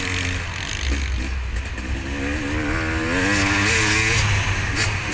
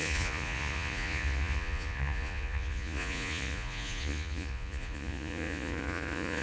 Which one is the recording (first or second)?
first